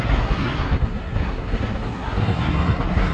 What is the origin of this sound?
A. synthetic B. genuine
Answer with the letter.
A